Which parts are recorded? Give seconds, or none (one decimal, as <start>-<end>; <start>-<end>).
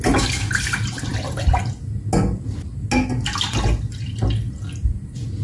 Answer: 0.0-5.4